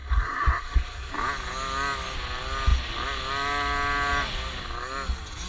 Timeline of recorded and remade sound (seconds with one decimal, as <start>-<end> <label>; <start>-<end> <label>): 0.0-1.1 remade; 1.1-5.5 recorded